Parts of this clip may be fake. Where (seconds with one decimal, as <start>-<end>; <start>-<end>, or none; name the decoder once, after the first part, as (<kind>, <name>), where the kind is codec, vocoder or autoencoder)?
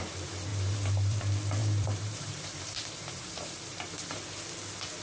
0.5-1.2 (vocoder, BigVGAN v2); 1.6-4.2